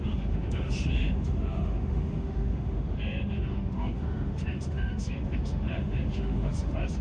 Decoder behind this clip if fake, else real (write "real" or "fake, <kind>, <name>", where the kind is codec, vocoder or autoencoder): fake, autoencoder, DAC-VAE